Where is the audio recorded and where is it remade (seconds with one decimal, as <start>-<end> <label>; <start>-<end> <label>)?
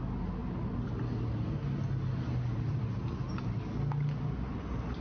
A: 0.0-5.0 recorded